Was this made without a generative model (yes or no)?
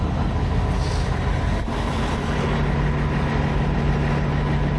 yes